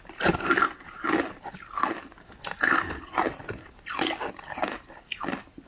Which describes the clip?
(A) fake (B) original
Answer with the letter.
B